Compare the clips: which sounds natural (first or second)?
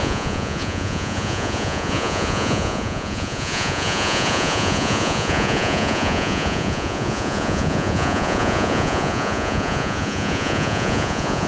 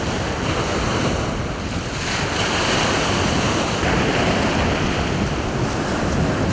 second